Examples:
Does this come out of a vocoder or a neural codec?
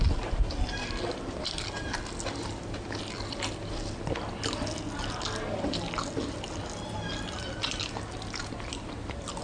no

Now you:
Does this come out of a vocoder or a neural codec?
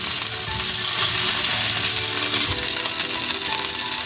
no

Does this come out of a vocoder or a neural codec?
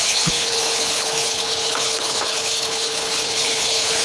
yes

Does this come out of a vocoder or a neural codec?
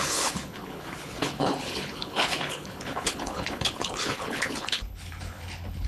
yes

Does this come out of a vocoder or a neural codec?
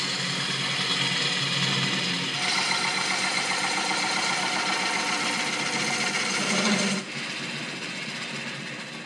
no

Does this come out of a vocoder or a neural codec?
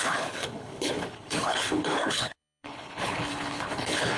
yes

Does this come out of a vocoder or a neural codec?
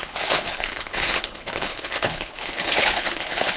yes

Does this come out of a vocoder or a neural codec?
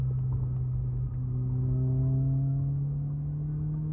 no